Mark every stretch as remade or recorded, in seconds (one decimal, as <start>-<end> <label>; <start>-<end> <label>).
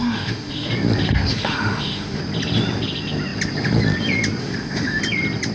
0.0-0.7 remade; 0.7-1.3 recorded; 1.3-2.2 remade; 2.2-4.4 recorded; 4.4-5.0 remade; 5.0-5.5 recorded